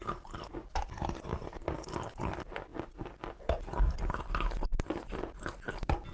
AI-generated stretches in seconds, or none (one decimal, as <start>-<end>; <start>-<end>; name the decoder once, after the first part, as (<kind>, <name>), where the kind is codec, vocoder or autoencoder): none

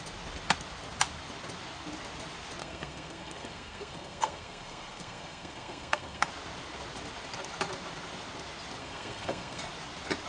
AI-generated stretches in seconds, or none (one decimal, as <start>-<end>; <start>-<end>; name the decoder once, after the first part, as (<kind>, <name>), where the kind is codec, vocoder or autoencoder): 2.6-6.3 (codec, SNAC); 8.8-9.6

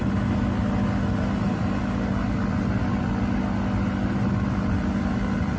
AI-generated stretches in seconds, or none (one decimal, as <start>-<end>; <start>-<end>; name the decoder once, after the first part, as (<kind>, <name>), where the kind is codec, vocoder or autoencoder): none